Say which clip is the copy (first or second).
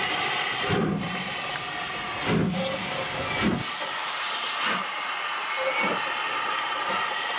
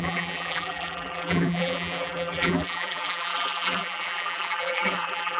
second